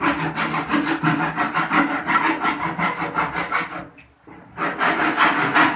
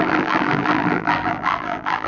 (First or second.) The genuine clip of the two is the first